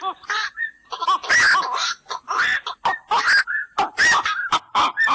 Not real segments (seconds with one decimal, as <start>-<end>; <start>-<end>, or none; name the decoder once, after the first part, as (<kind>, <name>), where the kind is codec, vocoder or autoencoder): none